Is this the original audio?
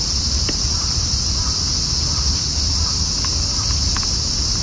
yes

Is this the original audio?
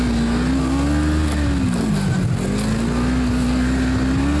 yes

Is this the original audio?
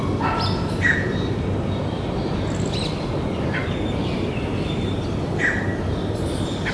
yes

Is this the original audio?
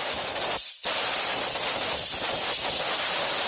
no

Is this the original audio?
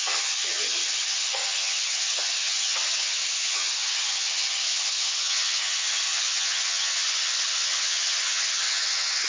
no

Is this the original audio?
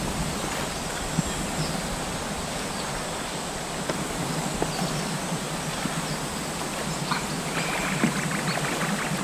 yes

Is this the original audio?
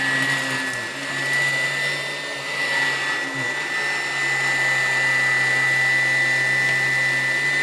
yes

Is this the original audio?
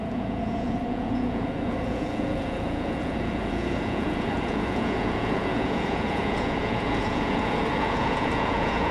no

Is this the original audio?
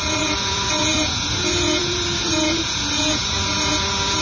no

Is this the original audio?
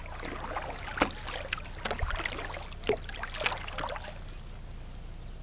yes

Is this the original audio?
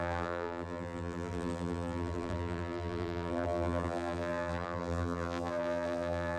no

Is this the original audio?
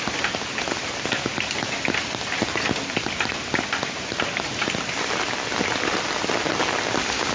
yes